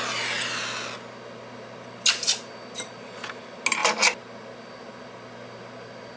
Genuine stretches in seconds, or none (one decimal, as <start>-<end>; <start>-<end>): 0.0-6.2

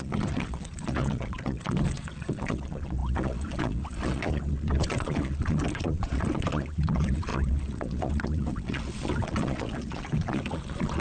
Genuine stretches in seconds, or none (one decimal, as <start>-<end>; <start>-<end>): none

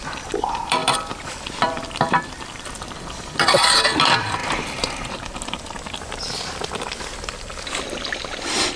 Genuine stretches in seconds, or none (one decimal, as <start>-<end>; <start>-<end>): 4.4-8.1

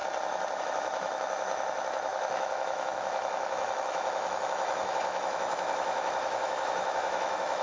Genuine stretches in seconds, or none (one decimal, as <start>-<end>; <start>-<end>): 0.0-0.6

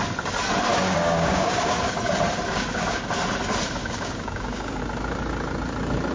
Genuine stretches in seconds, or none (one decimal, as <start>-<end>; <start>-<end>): 0.0-0.7; 1.9-2.5; 3.0-3.8; 4.8-6.1

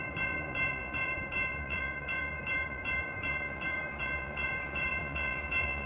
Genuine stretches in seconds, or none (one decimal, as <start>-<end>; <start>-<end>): none